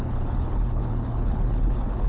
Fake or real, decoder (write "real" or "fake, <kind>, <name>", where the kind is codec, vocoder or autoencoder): fake, codec, HILCodec